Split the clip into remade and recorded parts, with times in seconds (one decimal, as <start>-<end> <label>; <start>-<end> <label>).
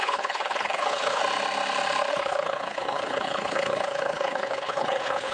0.0-1.2 remade; 1.2-2.1 recorded; 2.1-5.3 remade